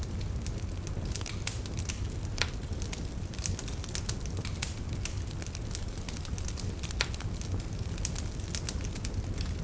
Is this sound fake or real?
real